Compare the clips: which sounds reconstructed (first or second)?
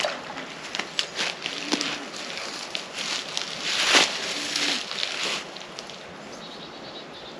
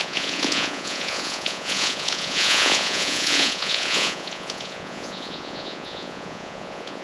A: second